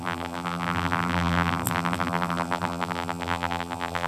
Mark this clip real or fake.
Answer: fake